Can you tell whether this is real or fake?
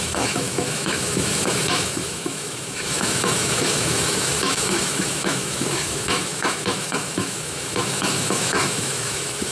fake